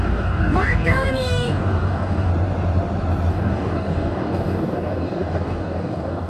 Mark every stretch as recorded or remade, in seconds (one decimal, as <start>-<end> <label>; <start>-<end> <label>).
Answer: 0.0-2.3 remade; 2.3-3.3 recorded; 3.3-6.3 remade

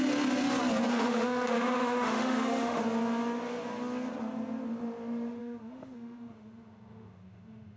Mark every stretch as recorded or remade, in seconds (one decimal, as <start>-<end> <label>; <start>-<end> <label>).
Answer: 0.0-0.9 recorded; 0.9-2.8 remade; 2.8-5.4 recorded; 5.4-7.8 remade

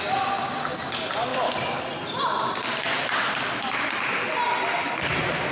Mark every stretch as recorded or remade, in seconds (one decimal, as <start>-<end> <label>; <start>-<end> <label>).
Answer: 0.0-5.5 recorded

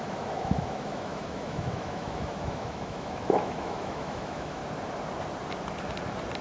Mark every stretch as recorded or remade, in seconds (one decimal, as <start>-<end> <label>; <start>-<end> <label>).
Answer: 0.0-4.6 remade; 4.6-6.4 recorded

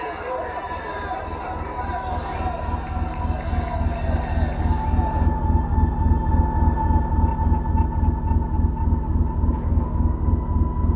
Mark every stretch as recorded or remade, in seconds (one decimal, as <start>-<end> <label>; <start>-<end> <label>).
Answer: 0.0-9.5 recorded; 9.5-10.3 remade; 10.3-11.0 recorded